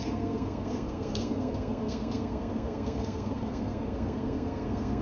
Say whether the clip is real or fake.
fake